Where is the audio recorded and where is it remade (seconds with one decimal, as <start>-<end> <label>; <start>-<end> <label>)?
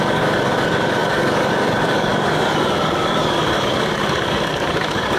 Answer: 0.0-5.2 remade